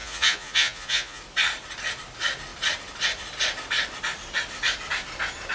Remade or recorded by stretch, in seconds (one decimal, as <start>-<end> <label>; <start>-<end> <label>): 0.0-1.2 remade; 1.2-5.5 recorded